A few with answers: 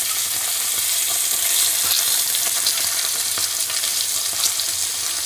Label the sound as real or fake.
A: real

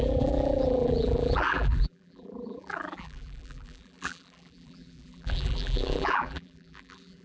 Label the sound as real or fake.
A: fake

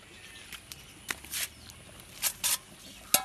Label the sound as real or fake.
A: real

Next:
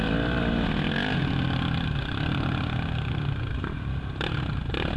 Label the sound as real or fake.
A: real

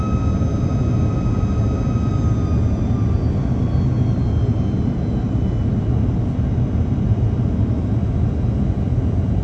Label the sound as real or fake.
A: real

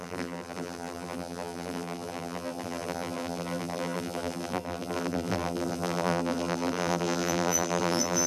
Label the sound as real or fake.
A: fake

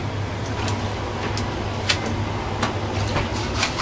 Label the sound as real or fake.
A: real